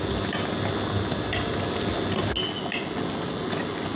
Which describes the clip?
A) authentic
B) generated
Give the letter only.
A